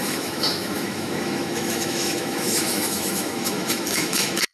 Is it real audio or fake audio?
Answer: fake